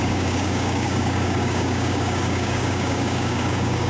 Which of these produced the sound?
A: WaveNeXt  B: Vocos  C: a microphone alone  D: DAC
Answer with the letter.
D